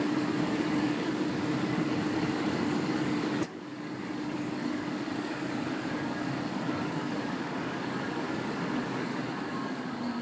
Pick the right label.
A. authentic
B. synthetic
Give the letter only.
B